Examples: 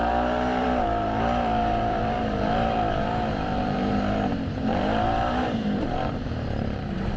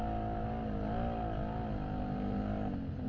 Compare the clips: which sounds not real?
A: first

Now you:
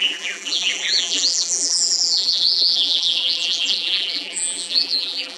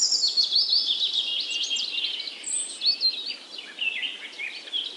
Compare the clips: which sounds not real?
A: first